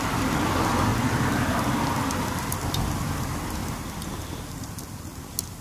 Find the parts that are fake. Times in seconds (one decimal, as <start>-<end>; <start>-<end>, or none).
3.6-4.4